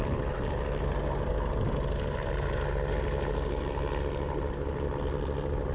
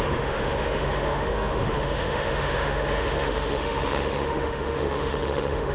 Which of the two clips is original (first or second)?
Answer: first